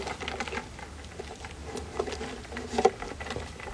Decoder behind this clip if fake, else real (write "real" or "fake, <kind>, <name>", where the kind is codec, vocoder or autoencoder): real